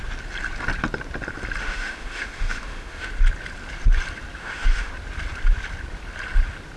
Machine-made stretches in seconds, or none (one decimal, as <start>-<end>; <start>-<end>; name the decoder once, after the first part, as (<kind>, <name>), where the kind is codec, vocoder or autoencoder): 1.6-3.1 (autoencoder, DAC-VAE); 4.4-4.9